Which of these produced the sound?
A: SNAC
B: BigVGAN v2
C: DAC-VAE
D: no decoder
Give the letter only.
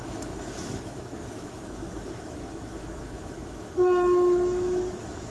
C